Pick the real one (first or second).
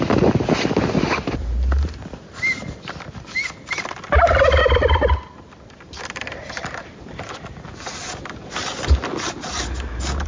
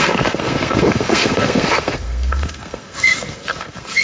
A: first